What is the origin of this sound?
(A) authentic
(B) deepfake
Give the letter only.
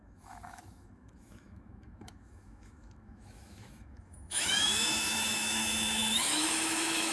B